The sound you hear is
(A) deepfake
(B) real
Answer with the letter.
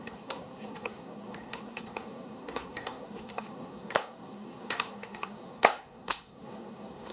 A